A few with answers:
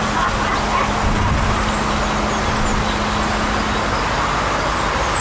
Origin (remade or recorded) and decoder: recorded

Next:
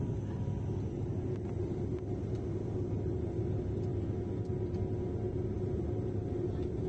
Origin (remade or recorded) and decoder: recorded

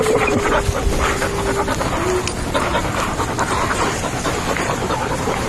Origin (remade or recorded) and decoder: recorded